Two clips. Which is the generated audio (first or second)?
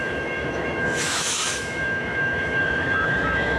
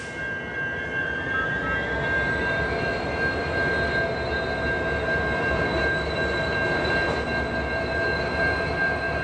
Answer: first